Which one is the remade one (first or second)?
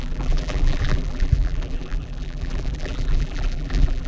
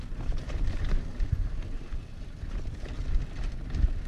first